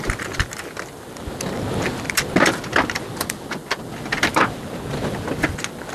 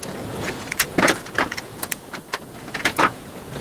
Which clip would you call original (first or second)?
first